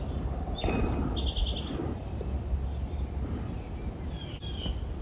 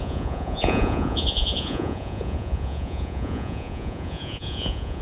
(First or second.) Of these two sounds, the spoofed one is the second